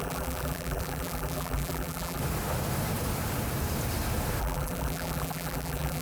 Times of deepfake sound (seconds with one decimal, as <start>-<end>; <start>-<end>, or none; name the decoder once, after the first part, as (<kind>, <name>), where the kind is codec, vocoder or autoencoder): 0.0-2.2 (vocoder, BigVGAN v2); 4.4-6.0